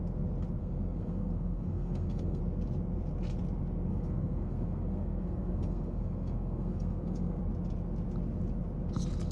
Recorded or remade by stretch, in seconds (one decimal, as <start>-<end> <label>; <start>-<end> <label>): 0.0-0.6 recorded; 0.6-2.4 remade; 2.4-3.9 recorded; 3.9-7.4 remade; 7.4-9.3 recorded